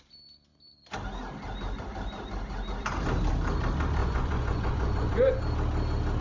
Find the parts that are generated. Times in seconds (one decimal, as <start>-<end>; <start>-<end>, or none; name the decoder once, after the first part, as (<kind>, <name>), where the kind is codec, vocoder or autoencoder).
4.0-5.4 (vocoder, Vocos)